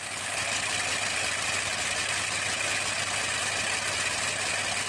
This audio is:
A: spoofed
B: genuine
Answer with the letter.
B